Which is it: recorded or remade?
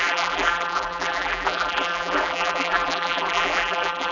remade